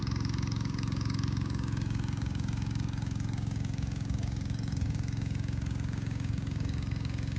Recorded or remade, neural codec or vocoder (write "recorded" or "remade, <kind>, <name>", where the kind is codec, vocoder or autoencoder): remade, codec, DAC